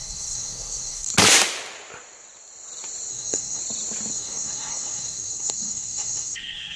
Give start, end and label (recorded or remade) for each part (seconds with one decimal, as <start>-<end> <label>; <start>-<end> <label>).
0.0-1.1 remade; 1.1-3.1 recorded; 3.1-3.6 remade; 3.6-4.1 recorded; 4.1-6.8 remade